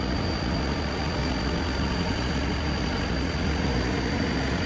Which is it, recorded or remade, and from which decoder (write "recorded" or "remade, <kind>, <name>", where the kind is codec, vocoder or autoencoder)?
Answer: remade, vocoder, Vocos